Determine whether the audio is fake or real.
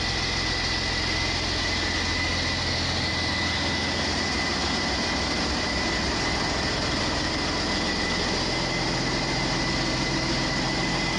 real